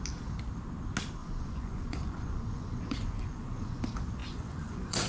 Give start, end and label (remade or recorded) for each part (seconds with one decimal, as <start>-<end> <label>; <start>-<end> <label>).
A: 0.0-1.2 recorded; 1.2-3.8 remade; 3.8-4.2 recorded; 4.2-5.1 remade